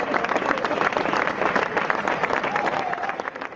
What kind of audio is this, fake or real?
fake